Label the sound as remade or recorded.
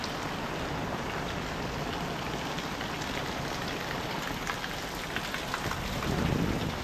recorded